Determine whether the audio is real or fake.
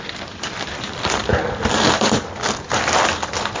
real